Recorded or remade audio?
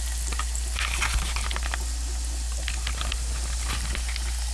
recorded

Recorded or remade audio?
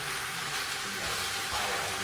recorded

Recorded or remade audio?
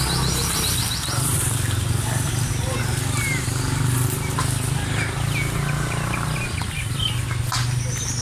recorded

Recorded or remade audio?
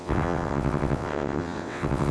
remade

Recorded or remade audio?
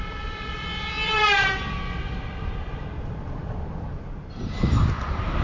remade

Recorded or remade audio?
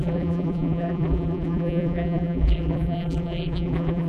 remade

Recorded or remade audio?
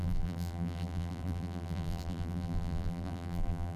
remade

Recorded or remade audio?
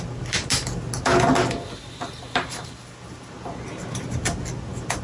recorded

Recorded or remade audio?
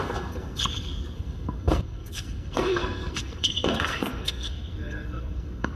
remade